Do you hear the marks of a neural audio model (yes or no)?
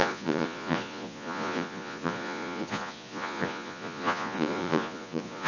yes